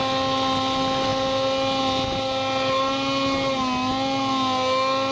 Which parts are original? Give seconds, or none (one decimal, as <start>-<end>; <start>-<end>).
0.0-5.1